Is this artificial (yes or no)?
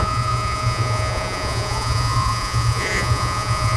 yes